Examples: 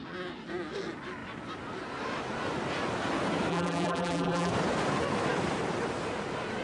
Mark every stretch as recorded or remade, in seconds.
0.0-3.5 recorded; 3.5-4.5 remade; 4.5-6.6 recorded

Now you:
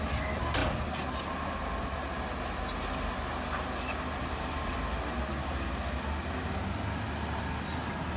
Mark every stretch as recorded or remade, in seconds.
0.0-8.2 recorded

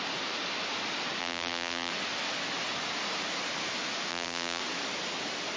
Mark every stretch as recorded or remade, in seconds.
0.0-1.2 recorded; 1.2-1.9 remade; 1.9-4.1 recorded; 4.1-4.6 remade; 4.6-5.6 recorded